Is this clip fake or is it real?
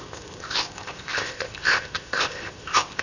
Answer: fake